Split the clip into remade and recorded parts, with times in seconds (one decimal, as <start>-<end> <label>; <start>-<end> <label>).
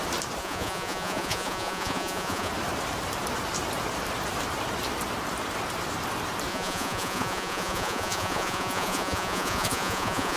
0.0-0.4 recorded; 0.4-2.5 remade; 2.5-6.5 recorded; 6.5-10.4 remade